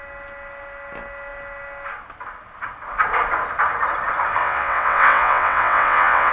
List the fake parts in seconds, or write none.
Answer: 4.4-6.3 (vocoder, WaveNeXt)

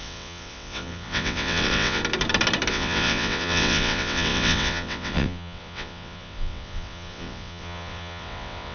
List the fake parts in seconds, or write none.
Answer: 0.0-2.0 (vocoder, WaveNeXt); 2.7-8.7

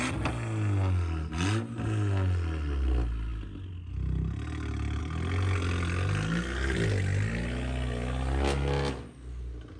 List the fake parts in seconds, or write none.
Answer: none

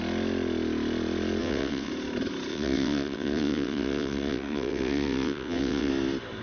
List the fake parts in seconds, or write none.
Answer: 1.4-1.9 (vocoder, WaveNeXt); 2.5-5.9

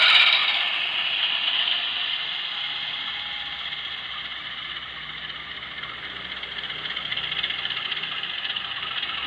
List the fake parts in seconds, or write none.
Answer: none

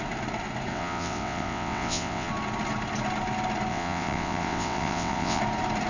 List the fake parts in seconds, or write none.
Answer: 0.7-2.3 (vocoder, WaveNeXt); 3.7-5.4

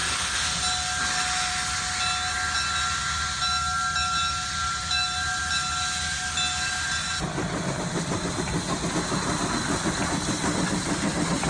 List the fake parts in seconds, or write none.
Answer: none

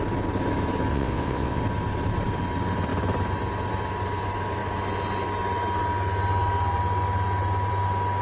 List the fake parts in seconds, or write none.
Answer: 0.9-1.6 (vocoder, WaveNeXt)